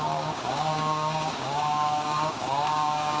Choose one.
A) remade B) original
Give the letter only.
A